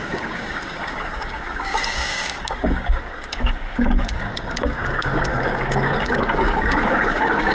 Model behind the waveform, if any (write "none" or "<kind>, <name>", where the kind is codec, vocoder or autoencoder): codec, DAC